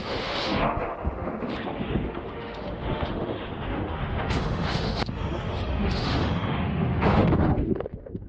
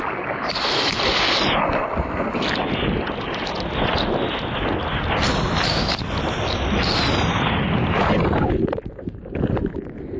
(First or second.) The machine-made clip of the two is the first